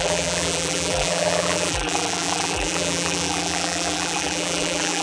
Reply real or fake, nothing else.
fake